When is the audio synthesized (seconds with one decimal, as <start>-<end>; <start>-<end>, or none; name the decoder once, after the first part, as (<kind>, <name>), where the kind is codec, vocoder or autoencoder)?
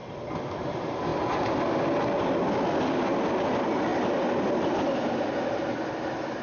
none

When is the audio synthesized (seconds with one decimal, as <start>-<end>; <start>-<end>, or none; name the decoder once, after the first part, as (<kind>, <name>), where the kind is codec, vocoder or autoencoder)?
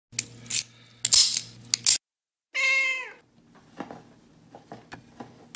none